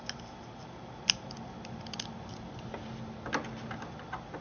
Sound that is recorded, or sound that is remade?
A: recorded